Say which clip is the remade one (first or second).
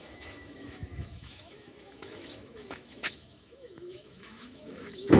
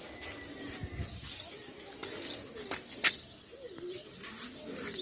first